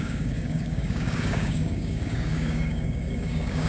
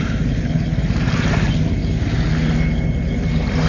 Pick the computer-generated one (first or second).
first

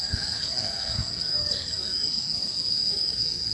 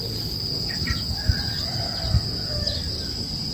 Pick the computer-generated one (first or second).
first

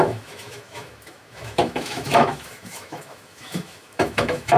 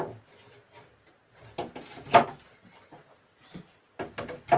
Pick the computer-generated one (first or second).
first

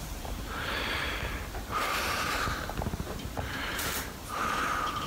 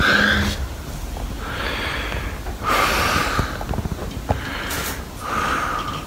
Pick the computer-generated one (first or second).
first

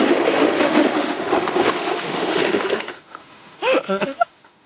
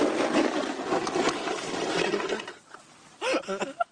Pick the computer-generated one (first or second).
first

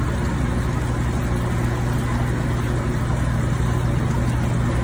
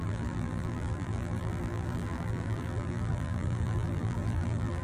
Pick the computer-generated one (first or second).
second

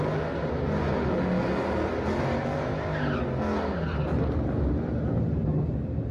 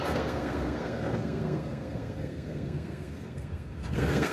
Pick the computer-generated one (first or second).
second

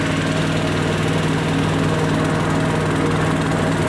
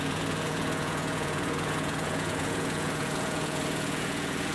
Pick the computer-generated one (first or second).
second